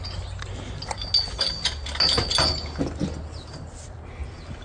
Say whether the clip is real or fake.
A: real